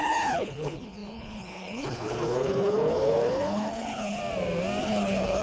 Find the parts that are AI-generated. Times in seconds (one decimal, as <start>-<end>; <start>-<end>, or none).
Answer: 0.0-4.2; 4.8-5.4